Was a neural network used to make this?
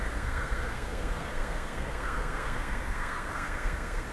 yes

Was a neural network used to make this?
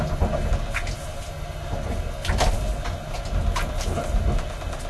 no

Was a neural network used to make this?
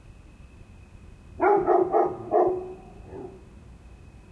no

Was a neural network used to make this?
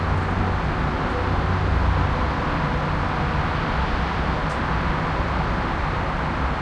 no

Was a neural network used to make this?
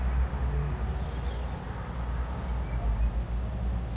no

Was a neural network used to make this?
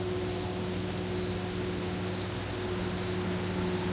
no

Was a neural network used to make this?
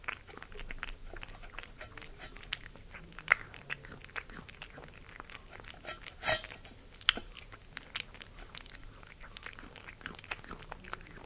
no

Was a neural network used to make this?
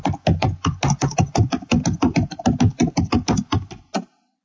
no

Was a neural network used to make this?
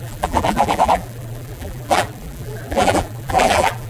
yes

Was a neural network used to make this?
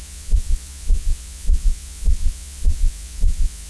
yes